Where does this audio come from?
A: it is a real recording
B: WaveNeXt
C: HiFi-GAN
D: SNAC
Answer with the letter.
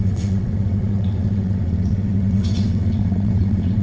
B